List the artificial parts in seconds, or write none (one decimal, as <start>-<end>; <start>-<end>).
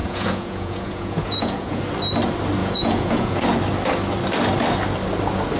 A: 0.0-1.8; 2.6-3.4